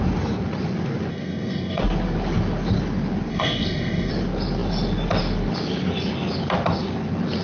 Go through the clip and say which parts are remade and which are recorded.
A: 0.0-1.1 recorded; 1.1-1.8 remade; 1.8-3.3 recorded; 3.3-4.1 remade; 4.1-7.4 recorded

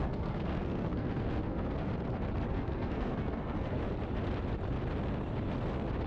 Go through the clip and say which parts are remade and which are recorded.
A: 0.0-1.9 remade; 1.9-2.5 recorded; 2.5-3.8 remade; 3.8-6.1 recorded

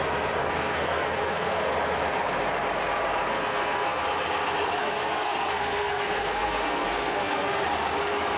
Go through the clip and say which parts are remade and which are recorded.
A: 0.0-0.4 recorded; 0.4-1.7 remade; 1.7-3.3 recorded; 3.3-4.0 remade; 4.0-4.8 recorded; 4.8-7.6 remade; 7.6-8.4 recorded